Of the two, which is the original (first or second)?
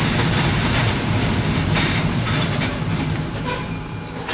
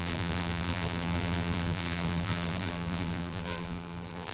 first